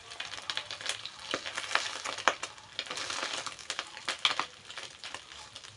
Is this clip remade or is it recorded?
recorded